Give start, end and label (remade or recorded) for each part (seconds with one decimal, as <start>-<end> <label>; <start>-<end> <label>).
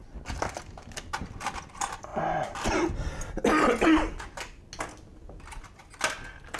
0.0-6.6 recorded